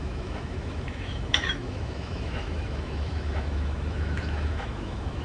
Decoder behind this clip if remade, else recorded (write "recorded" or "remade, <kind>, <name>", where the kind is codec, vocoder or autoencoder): remade, autoencoder, DAC-VAE